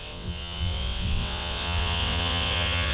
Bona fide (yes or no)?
no